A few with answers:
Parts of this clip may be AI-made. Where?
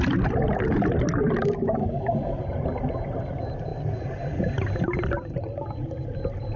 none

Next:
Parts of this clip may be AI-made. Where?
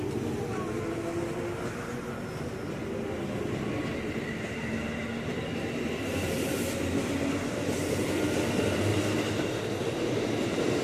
8.9-10.8 (vocoder, BigVGAN v2)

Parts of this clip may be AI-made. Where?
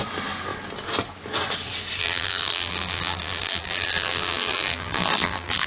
2.0-5.7 (vocoder, BigVGAN v2)